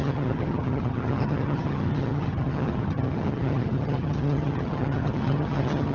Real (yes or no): no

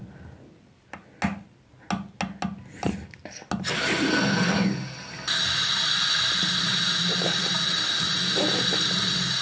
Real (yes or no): yes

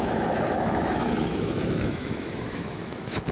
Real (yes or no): no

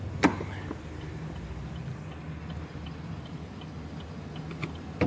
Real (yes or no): yes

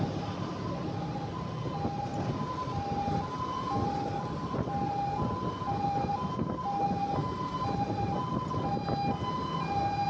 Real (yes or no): yes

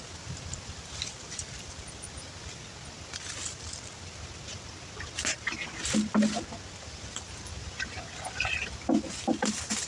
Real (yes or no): yes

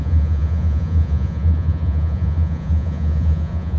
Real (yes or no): no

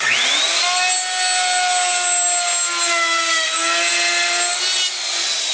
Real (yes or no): yes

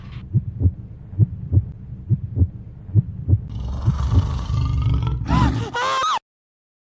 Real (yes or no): yes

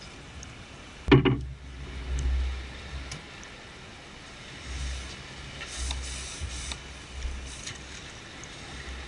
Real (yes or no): yes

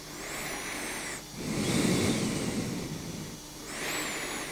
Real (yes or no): yes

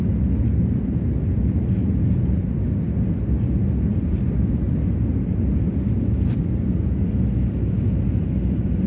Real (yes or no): yes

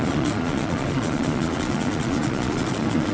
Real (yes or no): no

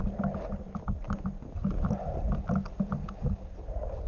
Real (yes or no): yes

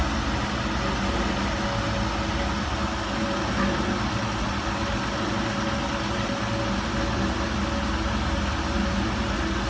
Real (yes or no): yes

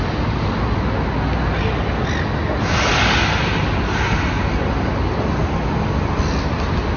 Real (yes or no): yes